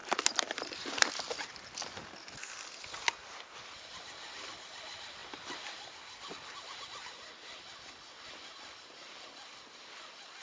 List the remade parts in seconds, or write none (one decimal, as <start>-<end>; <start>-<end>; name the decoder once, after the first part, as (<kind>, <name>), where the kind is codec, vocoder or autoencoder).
0.0-1.4 (vocoder, BigVGAN v2)